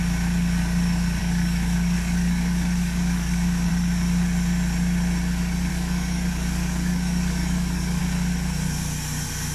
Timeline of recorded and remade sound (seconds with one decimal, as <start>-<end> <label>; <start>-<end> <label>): 0.0-1.2 recorded; 1.2-3.7 remade; 3.7-5.7 recorded; 5.7-8.0 remade; 8.0-9.5 recorded

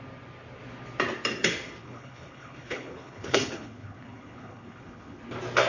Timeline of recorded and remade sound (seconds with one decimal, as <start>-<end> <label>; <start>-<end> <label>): 0.0-1.8 recorded; 1.8-5.2 remade; 5.2-5.7 recorded

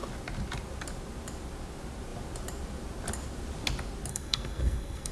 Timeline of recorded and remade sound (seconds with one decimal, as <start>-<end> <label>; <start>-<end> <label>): 0.0-4.1 recorded; 4.1-5.1 remade

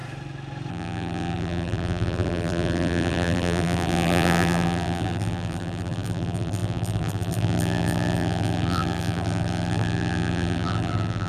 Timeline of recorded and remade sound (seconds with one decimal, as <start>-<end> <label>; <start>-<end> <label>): 0.0-0.7 recorded; 0.7-11.3 remade

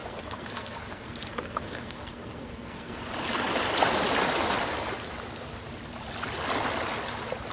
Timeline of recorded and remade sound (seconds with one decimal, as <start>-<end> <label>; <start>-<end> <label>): 0.0-3.0 remade; 3.0-7.5 recorded

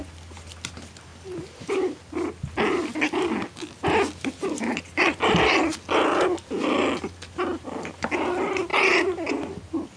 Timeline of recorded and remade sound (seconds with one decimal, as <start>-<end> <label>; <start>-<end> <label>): 0.0-1.1 recorded; 1.1-2.1 remade; 2.1-10.0 recorded

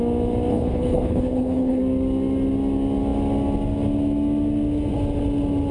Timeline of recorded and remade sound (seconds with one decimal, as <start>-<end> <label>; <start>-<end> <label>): 0.0-0.5 recorded; 0.5-1.8 remade; 1.8-5.7 recorded